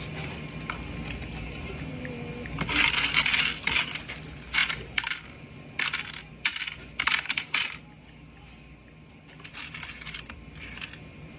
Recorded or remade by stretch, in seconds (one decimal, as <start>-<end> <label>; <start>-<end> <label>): 0.0-11.4 recorded